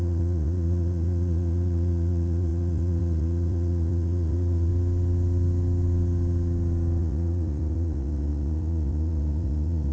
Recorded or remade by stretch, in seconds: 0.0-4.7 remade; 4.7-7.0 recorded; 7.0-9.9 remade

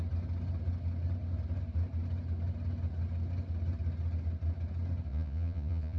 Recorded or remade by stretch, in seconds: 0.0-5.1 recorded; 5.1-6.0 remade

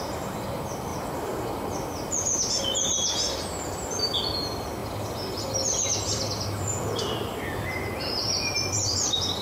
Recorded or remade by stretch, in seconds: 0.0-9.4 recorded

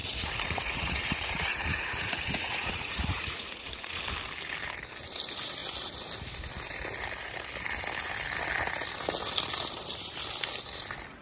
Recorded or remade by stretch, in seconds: 0.0-4.0 remade; 4.0-11.2 recorded

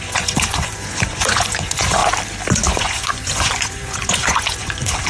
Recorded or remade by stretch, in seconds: 0.0-2.0 remade; 2.0-2.7 recorded; 2.7-5.1 remade